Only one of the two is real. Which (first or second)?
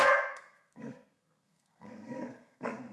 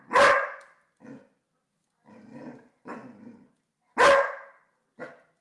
second